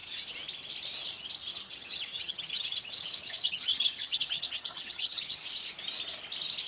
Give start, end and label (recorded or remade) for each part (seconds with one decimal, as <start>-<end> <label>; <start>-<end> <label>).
0.0-1.5 recorded; 1.5-5.5 remade; 5.5-6.7 recorded